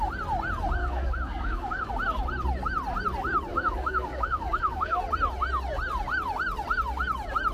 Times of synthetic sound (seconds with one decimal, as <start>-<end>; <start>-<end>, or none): 0.8-1.9; 3.5-5.0